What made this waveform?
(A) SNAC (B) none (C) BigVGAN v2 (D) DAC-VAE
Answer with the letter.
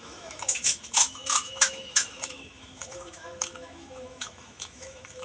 D